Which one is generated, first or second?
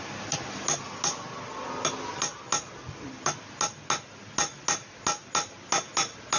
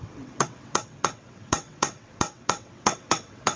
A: second